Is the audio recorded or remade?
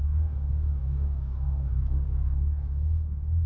remade